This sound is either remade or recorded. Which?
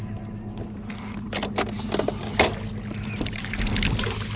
recorded